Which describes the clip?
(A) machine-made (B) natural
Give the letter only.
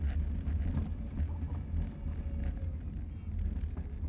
B